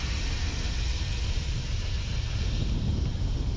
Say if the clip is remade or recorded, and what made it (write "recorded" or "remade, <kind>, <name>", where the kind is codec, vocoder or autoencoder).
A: recorded